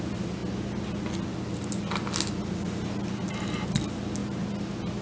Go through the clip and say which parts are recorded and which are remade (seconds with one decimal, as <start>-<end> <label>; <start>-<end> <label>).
0.0-5.0 recorded